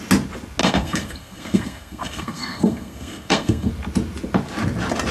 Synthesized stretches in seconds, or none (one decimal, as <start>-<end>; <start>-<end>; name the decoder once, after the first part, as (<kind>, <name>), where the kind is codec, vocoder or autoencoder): 0.6-3.7 (codec, SNAC)